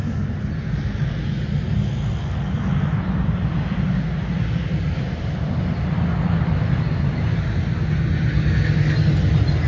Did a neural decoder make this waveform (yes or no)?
no